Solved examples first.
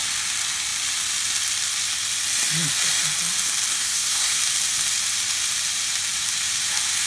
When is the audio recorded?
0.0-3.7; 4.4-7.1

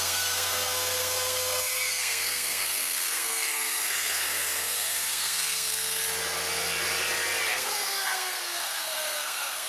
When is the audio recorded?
6.0-7.5

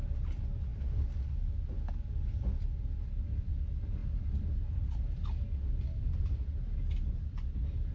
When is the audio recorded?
0.0-7.9

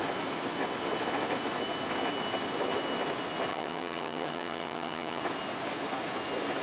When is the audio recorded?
0.0-3.5; 5.2-6.6

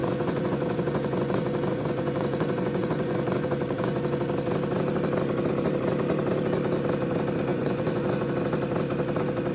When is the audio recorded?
4.2-7.5; 8.3-9.5

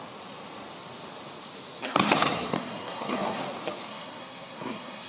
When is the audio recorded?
0.0-1.8; 3.4-3.9

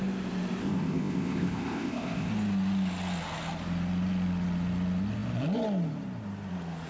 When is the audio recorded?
0.0-0.6; 2.3-6.9

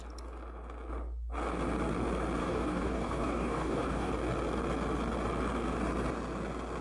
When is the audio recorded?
0.0-2.4; 4.1-6.8